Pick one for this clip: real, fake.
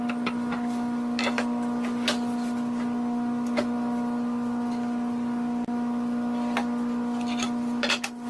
real